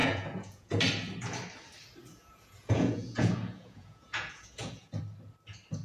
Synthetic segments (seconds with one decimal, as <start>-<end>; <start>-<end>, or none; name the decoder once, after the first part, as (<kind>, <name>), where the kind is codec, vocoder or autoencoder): 0.0-0.8 (vocoder, Vocos); 2.1-5.0